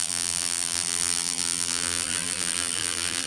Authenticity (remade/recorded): remade